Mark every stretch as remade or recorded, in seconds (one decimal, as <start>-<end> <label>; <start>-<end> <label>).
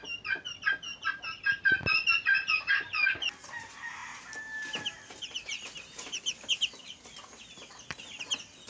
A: 0.0-6.8 recorded; 6.8-8.0 remade; 8.0-8.7 recorded